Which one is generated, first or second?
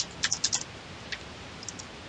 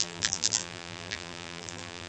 second